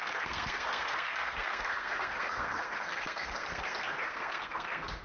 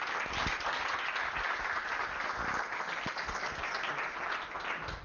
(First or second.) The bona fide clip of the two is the second